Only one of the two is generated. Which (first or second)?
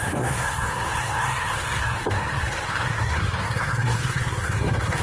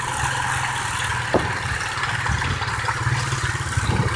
first